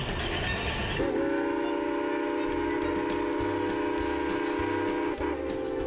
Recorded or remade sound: recorded